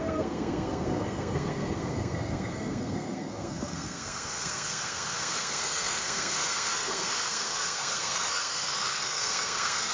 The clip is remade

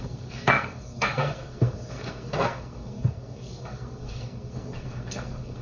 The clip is remade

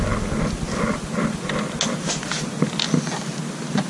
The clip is recorded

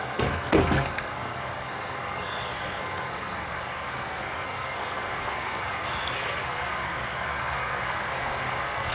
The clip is remade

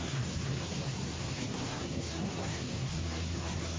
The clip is remade